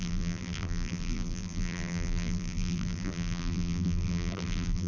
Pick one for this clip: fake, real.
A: fake